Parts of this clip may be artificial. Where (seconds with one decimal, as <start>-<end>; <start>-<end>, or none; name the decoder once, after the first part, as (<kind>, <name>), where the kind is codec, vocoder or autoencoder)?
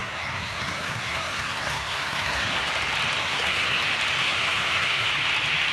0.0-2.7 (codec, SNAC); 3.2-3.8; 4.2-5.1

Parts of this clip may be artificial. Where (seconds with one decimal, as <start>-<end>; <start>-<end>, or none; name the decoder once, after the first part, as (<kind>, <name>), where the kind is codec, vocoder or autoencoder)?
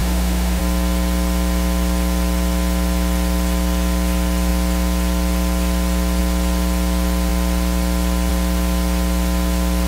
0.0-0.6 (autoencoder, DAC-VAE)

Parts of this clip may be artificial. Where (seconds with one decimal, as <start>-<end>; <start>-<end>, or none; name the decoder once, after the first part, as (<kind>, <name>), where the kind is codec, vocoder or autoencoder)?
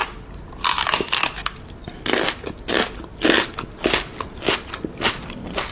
none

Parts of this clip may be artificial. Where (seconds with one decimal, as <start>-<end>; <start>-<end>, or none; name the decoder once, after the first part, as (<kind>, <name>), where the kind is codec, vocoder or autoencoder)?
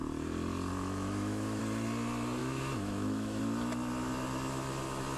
0.7-1.6 (autoencoder, DAC-VAE); 2.4-3.4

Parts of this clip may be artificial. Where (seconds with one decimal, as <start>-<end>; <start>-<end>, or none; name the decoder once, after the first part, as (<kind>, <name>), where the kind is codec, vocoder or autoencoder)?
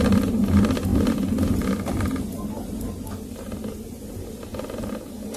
none